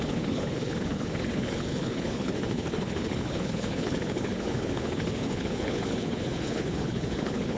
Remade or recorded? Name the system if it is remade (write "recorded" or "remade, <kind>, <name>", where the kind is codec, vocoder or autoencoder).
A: remade, codec, HILCodec